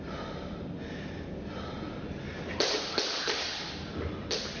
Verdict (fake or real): real